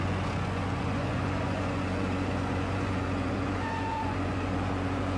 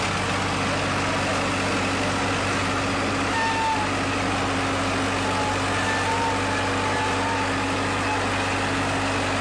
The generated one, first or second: first